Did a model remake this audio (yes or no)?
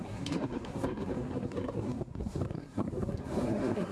yes